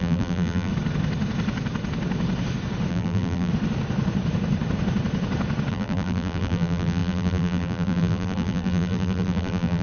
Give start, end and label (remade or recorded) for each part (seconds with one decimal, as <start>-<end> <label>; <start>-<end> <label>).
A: 0.0-0.7 remade; 0.7-2.9 recorded; 2.9-3.5 remade; 3.5-5.7 recorded; 5.7-9.8 remade